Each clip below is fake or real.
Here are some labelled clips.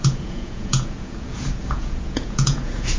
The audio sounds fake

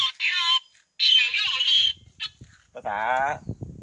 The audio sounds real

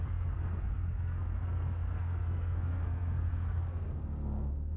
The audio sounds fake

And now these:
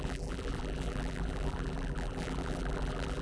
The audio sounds fake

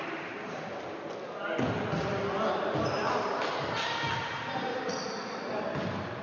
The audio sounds real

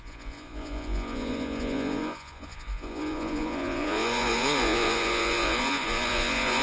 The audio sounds fake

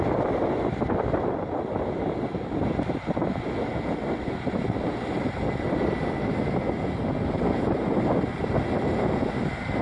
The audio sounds real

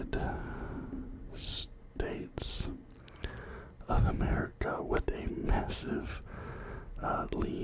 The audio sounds real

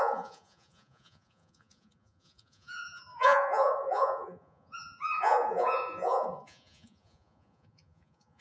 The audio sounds fake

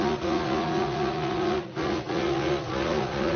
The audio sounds fake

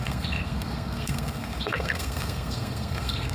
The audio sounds fake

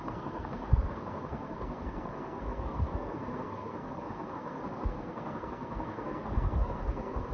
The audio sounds fake